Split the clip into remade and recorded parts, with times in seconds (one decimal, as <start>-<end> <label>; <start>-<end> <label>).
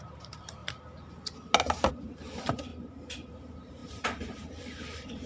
0.0-0.6 remade; 0.6-1.9 recorded; 1.9-2.7 remade; 2.7-3.3 recorded; 3.3-5.3 remade